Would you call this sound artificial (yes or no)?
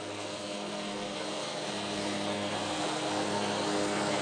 yes